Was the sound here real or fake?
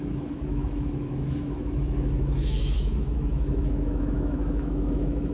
fake